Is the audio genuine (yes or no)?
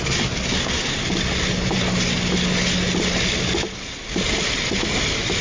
yes